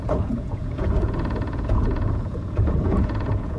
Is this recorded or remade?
remade